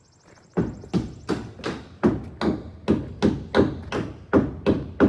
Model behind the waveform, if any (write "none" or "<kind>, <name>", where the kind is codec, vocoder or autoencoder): none